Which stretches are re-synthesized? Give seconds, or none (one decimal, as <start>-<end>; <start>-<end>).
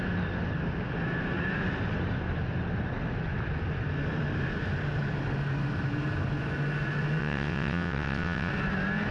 7.2-8.5